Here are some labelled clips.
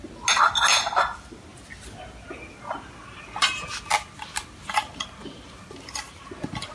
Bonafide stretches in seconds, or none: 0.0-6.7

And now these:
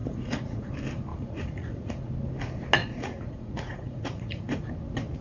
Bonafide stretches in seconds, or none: 0.7-1.1; 2.1-2.8; 4.7-5.2